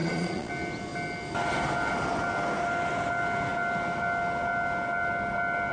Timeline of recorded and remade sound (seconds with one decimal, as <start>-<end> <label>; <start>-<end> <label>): 0.0-0.5 remade; 0.5-5.7 recorded